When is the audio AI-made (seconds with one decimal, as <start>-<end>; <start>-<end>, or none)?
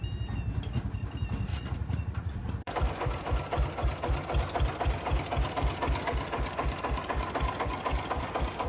1.5-2.7